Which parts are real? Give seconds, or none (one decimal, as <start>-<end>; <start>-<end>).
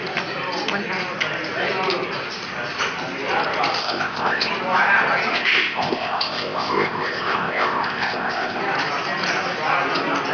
0.0-3.8; 4.5-5.3; 8.6-10.3